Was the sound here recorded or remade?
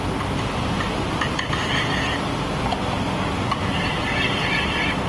recorded